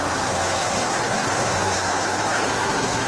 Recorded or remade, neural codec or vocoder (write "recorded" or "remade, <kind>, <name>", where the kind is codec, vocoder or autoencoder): remade, codec, SNAC